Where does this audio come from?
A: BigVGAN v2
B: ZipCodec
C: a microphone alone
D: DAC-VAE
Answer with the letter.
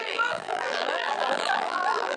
A